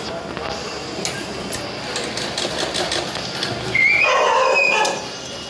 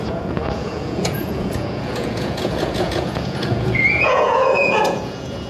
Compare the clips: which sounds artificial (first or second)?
second